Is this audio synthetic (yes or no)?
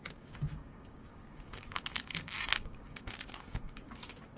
yes